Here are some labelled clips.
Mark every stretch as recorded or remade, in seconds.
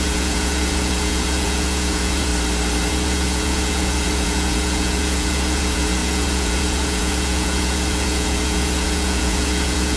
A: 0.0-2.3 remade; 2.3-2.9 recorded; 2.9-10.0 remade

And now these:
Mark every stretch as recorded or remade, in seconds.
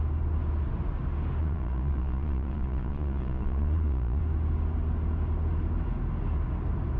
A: 0.0-1.4 recorded; 1.4-4.2 remade; 4.2-7.0 recorded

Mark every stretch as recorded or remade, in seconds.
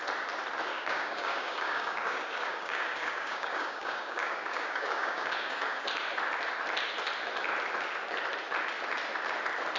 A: 0.0-0.7 recorded; 0.7-5.8 remade; 5.8-9.8 recorded